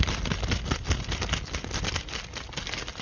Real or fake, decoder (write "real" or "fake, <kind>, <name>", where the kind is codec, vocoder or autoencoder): real